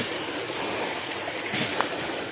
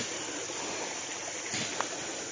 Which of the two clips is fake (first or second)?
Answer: first